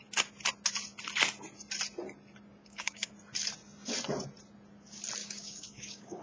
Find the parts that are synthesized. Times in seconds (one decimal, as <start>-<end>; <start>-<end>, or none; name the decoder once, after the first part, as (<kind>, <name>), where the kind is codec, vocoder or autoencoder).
2.6-3.1 (codec, DAC); 5.2-6.2